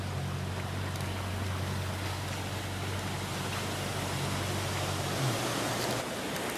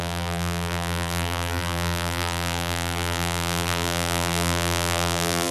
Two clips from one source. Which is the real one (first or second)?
first